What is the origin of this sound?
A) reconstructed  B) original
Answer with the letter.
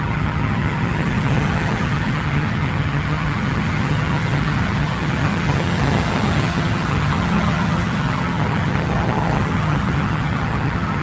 A